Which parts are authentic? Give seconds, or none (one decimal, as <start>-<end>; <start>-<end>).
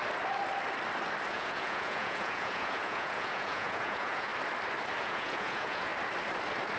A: 0.0-1.3; 4.3-5.0; 5.9-6.8